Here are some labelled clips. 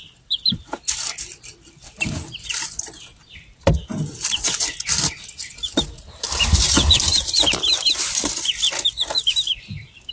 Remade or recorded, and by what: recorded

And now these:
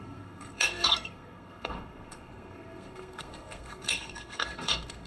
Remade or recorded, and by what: remade, codec, SNAC